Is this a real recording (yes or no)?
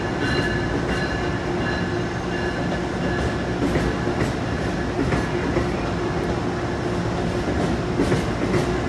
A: yes